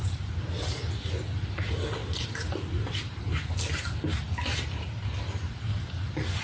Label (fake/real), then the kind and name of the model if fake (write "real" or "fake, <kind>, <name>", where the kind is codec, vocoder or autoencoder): real